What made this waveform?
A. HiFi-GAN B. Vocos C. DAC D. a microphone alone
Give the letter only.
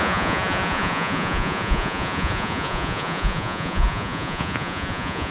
B